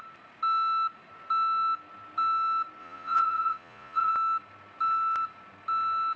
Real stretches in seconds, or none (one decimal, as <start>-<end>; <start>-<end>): 0.0-2.8; 4.1-6.2